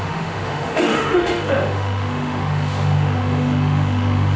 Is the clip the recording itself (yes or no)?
no